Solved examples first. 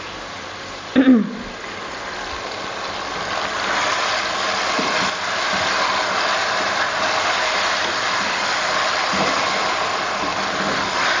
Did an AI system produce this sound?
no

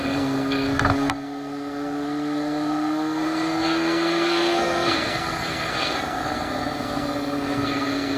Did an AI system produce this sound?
yes